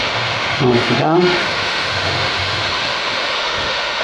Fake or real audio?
fake